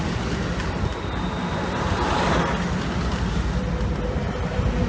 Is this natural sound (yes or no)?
yes